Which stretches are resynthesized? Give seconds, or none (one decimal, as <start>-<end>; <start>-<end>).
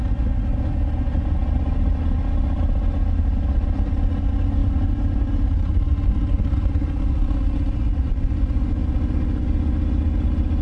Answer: 4.6-7.1